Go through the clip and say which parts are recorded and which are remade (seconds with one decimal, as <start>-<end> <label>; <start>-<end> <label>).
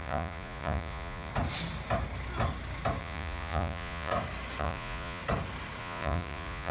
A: 0.0-1.3 remade; 1.3-3.0 recorded; 3.0-4.1 remade; 4.1-4.6 recorded; 4.6-5.2 remade; 5.2-5.8 recorded; 5.8-6.7 remade